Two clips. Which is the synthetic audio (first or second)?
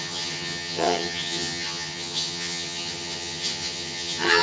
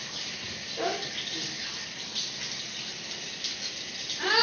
first